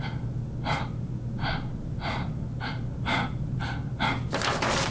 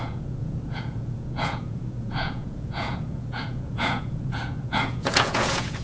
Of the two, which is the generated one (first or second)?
second